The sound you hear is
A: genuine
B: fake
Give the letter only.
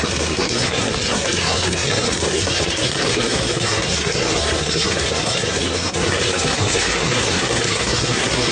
B